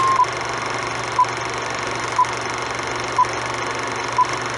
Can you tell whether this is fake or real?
real